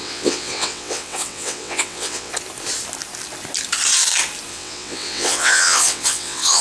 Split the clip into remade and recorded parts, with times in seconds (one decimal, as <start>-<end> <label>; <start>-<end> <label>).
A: 0.0-2.3 remade; 2.3-4.5 recorded; 4.5-6.6 remade